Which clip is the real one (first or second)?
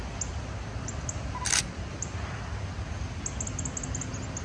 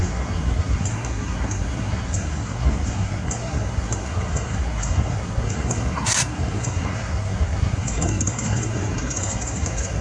first